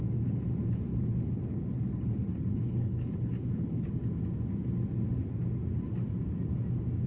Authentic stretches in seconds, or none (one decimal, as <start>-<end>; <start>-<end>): 0.0-0.9; 3.9-7.1

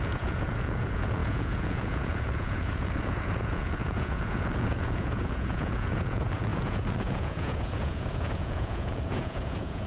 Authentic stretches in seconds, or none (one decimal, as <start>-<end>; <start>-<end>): none